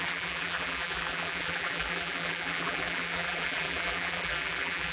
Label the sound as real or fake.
fake